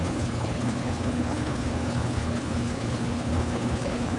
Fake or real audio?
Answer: fake